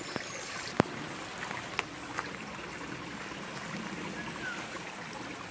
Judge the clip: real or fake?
real